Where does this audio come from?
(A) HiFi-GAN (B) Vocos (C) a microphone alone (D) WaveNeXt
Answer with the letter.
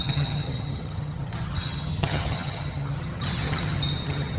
A